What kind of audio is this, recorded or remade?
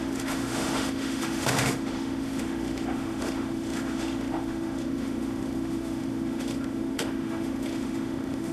remade